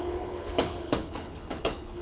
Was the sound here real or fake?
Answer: fake